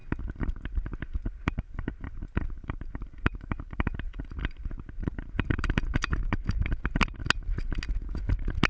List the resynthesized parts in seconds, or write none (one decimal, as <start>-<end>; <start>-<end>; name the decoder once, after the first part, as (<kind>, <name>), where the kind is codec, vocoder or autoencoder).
0.0-3.4 (vocoder, BigVGAN v2); 4.4-6.7